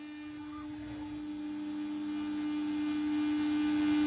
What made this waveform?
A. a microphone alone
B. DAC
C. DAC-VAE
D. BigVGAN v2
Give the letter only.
A